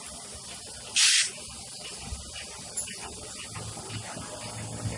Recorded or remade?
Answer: recorded